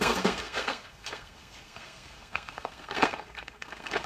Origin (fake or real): fake